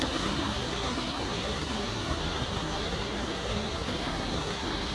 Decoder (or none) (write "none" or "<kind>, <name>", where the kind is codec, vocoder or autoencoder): codec, SNAC